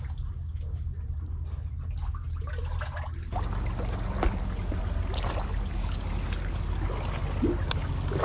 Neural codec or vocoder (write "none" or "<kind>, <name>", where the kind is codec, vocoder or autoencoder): none